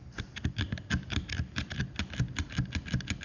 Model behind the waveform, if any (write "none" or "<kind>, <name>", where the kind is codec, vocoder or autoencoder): none